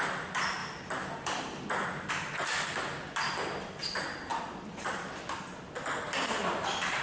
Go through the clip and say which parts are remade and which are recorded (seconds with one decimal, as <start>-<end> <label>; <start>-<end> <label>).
0.0-0.6 recorded; 0.6-2.1 remade; 2.1-4.3 recorded; 4.3-5.4 remade; 5.4-7.0 recorded